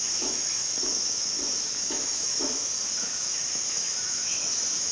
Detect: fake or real fake